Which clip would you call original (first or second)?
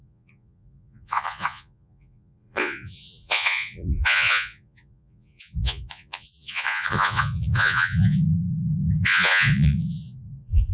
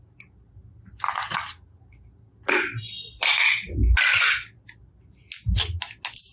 second